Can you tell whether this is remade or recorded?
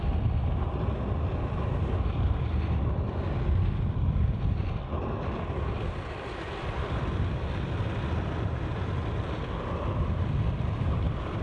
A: recorded